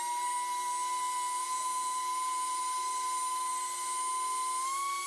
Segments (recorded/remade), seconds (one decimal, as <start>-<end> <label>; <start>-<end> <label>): 0.0-1.4 recorded; 1.4-2.6 remade; 2.6-5.1 recorded